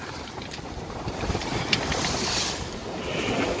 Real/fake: real